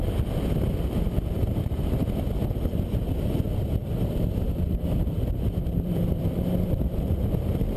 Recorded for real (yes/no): no